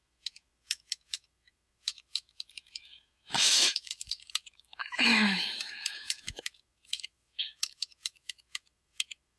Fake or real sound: fake